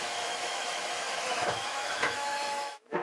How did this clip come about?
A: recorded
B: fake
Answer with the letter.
B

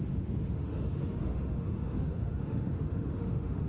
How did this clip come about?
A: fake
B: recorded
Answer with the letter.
A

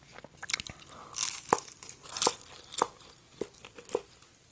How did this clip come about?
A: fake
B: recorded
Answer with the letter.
B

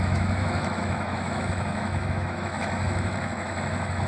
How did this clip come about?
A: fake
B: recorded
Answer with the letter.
A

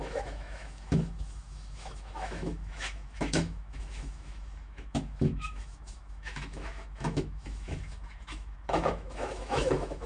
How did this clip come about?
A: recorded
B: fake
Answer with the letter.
B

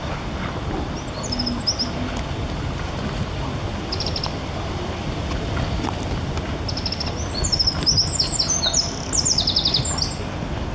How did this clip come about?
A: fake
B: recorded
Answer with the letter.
B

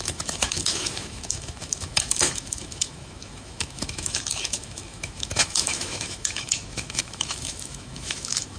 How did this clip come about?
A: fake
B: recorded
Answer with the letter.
A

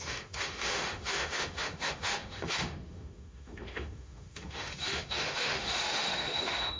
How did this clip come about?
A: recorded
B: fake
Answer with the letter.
B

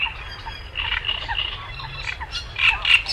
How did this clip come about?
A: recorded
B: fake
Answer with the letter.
A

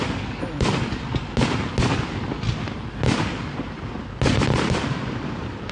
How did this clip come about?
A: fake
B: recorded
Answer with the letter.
B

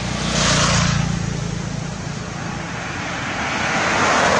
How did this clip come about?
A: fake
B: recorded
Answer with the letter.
B